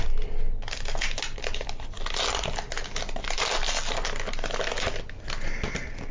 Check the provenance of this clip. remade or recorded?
recorded